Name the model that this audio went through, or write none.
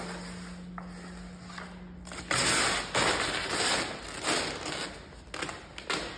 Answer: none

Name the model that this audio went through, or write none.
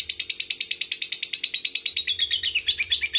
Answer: none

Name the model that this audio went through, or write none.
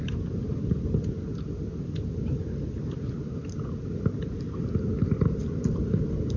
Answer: none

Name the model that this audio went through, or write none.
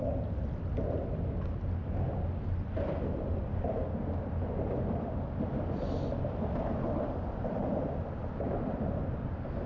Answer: none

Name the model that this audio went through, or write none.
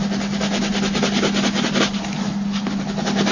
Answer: none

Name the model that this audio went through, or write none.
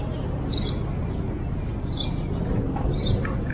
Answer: none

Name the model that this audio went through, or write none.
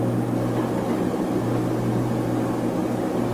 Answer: none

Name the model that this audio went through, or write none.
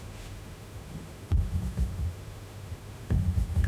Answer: autoencoder, DAC-VAE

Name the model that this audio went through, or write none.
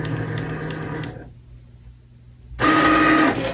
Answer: none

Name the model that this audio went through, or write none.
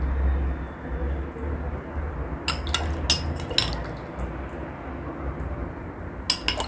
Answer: none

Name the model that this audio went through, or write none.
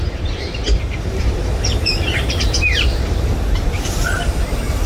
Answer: vocoder, BigVGAN v2